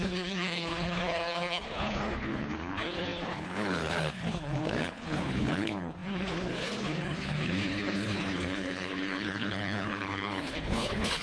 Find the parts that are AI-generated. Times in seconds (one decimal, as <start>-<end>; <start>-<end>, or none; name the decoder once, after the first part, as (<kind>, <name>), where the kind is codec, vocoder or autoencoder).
0.0-11.2 (codec, HILCodec)